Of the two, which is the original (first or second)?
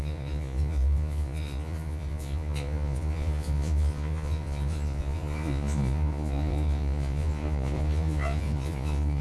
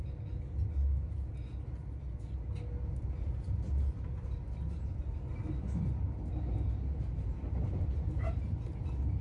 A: second